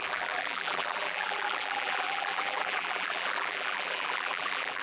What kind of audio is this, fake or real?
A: fake